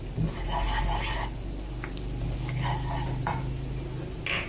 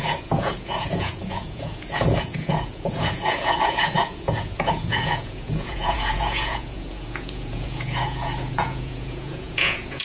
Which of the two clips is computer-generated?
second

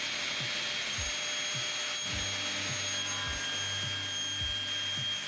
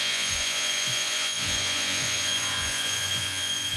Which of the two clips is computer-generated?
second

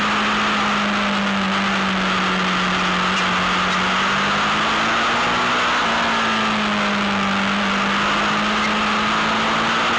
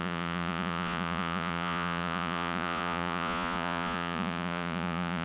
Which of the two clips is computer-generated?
second